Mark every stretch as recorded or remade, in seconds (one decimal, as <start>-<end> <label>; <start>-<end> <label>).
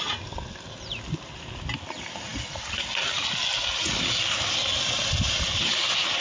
0.0-6.2 recorded